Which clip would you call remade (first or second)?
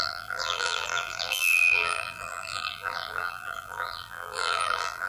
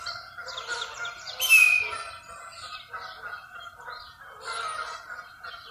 first